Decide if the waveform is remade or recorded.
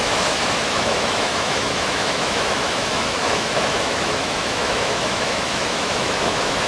remade